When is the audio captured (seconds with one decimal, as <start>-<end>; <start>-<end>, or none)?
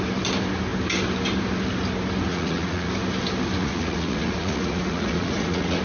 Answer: 0.0-2.3; 2.9-3.6